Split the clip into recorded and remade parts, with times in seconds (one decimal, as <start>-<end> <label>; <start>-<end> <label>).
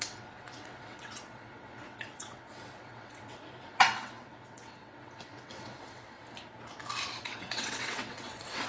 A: 0.0-6.2 remade; 6.2-7.2 recorded; 7.2-8.7 remade